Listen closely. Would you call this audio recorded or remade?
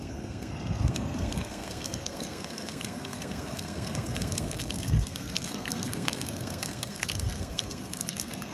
remade